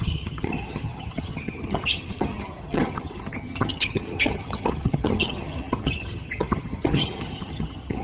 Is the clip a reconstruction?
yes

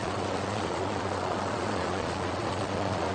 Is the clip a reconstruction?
yes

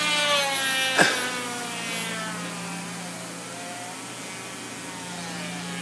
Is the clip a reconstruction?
no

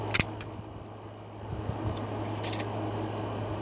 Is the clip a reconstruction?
yes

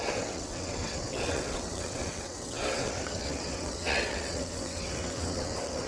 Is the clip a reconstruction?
yes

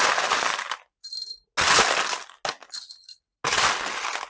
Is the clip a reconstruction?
no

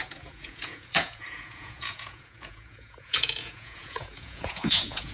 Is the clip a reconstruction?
yes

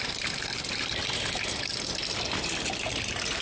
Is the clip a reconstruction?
no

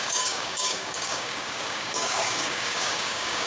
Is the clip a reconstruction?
yes